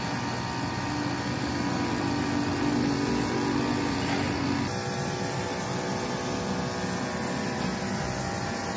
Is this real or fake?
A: real